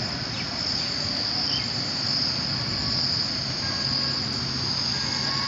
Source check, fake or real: real